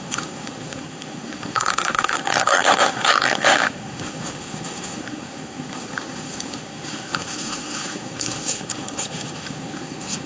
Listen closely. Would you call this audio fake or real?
fake